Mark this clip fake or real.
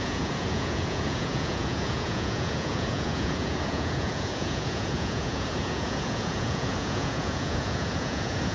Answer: fake